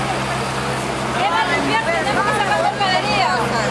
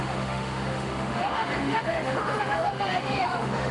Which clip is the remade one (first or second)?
second